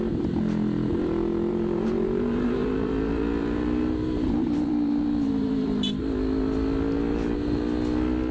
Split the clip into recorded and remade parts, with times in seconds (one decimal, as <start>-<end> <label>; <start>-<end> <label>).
0.0-1.5 recorded; 1.5-5.9 remade; 5.9-7.1 recorded; 7.1-7.6 remade; 7.6-8.3 recorded

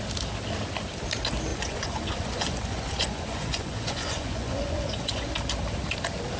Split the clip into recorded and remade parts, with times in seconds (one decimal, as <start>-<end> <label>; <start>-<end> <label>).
0.0-1.5 recorded; 1.5-5.3 remade; 5.3-6.4 recorded